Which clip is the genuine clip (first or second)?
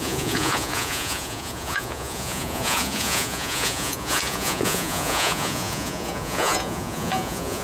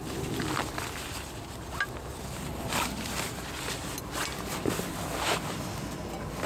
second